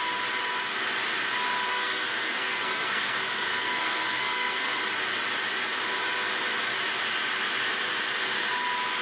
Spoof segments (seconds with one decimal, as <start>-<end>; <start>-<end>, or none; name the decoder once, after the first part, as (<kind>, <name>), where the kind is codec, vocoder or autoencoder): 1.7-4.8 (codec, SNAC)